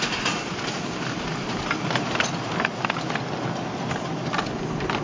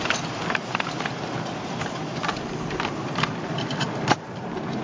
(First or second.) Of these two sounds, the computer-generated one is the second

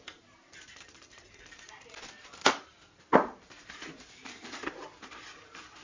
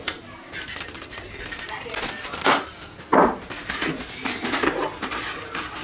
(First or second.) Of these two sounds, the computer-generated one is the first